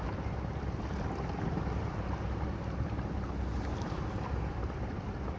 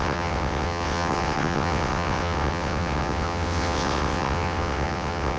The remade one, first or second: second